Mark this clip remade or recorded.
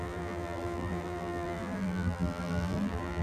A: remade